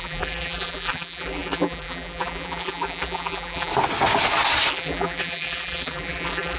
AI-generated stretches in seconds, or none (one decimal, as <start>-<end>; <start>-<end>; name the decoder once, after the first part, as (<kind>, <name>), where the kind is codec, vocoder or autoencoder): 0.0-3.7 (vocoder, BigVGAN v2); 4.7-6.6